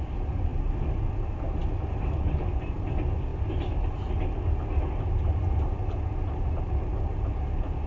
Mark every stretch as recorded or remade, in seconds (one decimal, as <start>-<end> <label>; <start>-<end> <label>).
0.0-0.5 recorded; 0.5-1.0 remade; 1.0-7.9 recorded